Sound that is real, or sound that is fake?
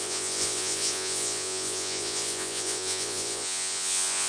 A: fake